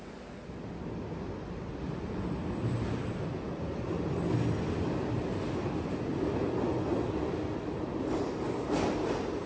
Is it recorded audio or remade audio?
recorded